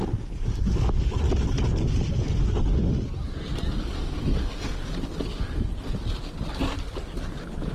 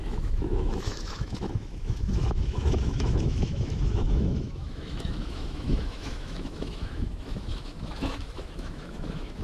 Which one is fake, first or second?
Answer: second